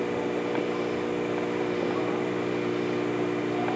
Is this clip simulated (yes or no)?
no